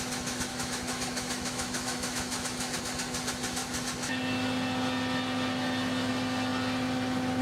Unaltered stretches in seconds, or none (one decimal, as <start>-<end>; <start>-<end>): 0.0-0.5; 2.8-7.4